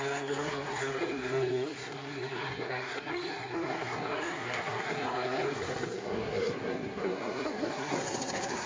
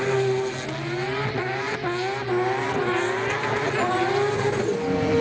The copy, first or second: first